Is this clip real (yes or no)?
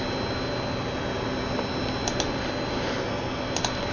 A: yes